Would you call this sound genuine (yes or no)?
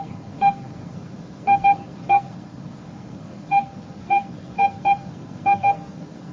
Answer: no